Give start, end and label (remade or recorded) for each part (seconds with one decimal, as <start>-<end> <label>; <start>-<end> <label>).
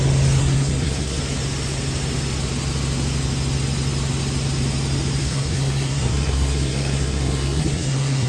0.0-0.4 recorded; 0.4-1.2 remade; 1.2-5.2 recorded; 5.2-8.3 remade